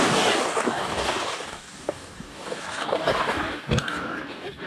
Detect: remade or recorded remade